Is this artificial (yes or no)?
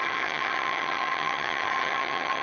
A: yes